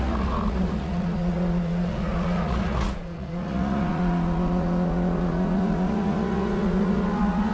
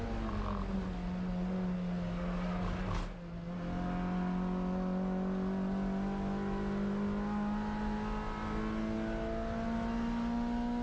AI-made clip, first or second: first